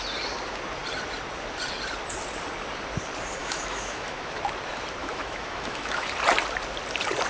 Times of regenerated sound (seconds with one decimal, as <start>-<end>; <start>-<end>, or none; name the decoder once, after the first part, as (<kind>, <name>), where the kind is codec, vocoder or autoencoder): 3.4-4.4 (autoencoder, DAC-VAE); 5.0-6.1